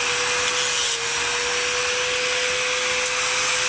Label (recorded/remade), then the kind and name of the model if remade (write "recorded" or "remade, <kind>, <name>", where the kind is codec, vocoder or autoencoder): recorded